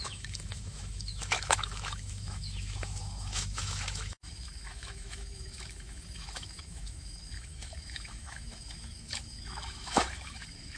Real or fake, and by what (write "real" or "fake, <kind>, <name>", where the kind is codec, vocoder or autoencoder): fake, autoencoder, DAC-VAE